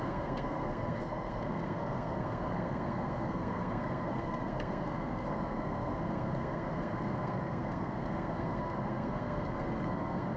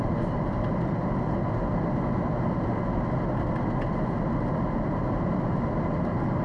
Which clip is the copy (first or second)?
first